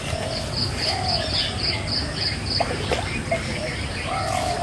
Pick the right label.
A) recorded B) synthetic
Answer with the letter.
A